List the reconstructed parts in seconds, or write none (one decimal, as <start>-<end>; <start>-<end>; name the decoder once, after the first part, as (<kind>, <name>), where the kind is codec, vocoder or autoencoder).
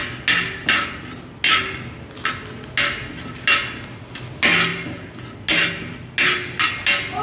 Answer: none